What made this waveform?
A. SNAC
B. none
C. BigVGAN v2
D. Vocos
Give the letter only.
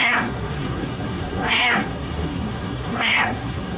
A